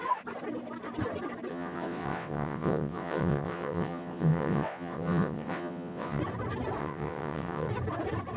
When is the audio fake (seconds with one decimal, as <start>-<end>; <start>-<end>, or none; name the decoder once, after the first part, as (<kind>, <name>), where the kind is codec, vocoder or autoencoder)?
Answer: 1.5-6.2 (vocoder, WaveNeXt); 6.8-7.7